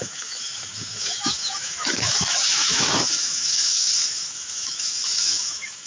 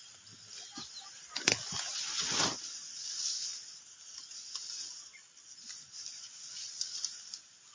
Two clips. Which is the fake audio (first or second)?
first